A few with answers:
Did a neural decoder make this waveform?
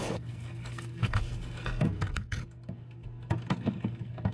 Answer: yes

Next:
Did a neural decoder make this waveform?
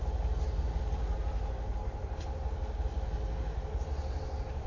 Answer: no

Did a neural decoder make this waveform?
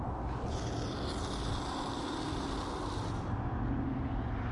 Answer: no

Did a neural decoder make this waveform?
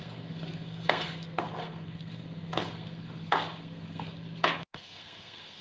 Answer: yes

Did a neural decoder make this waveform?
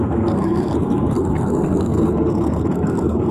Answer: yes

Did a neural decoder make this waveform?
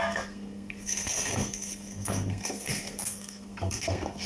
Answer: yes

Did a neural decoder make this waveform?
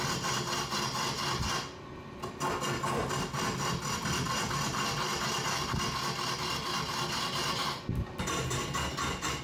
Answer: no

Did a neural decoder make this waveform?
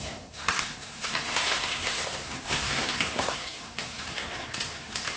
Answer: yes